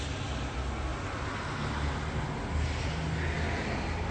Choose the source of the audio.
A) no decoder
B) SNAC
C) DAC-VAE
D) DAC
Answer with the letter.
A